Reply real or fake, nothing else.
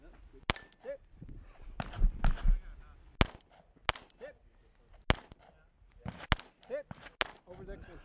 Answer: real